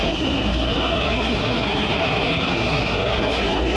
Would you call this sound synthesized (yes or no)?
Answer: yes